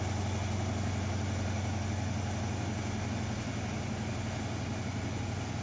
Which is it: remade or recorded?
recorded